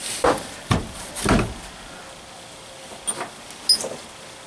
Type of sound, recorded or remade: recorded